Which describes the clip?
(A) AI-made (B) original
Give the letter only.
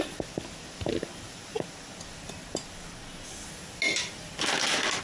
B